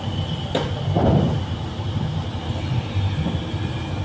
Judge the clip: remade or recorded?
recorded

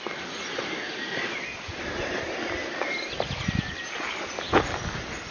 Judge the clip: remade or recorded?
recorded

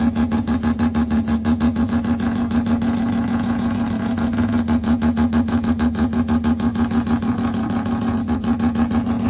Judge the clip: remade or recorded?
remade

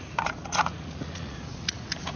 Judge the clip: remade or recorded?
remade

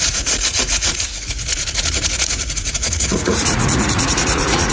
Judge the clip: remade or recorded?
remade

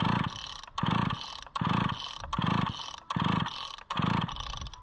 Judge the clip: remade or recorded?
recorded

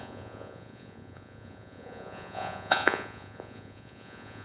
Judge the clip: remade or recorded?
remade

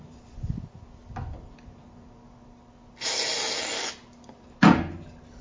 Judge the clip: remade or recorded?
recorded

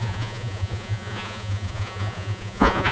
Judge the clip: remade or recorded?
remade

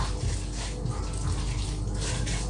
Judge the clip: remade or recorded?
recorded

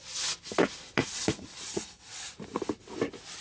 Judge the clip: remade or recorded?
recorded